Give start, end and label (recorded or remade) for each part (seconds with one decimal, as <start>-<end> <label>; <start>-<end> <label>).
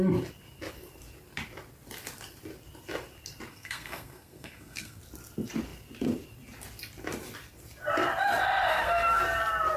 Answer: 0.0-3.5 recorded; 3.5-5.0 remade; 5.0-8.7 recorded; 8.7-9.2 remade; 9.2-9.8 recorded